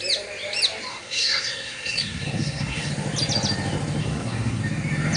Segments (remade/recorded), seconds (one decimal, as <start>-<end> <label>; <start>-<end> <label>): 0.0-0.9 recorded; 0.9-2.9 remade; 2.9-4.0 recorded; 4.0-4.6 remade; 4.6-5.2 recorded